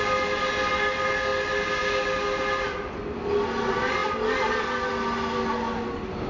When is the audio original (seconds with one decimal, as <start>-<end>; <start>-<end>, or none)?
0.0-6.3